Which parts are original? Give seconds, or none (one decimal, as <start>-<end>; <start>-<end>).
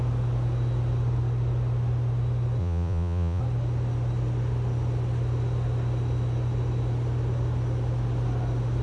0.0-2.6; 3.4-8.8